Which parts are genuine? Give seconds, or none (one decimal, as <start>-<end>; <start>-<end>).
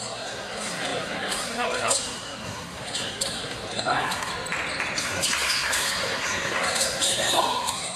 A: 4.3-5.0